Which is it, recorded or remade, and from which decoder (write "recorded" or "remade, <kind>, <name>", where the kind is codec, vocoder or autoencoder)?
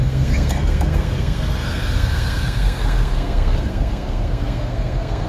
remade, codec, SNAC